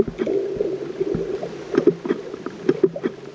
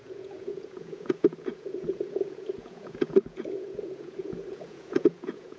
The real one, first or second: first